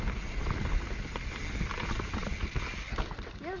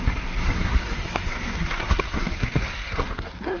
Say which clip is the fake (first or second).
second